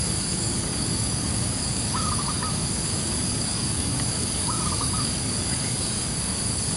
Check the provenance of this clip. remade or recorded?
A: remade